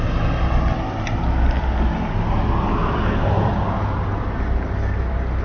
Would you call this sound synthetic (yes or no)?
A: no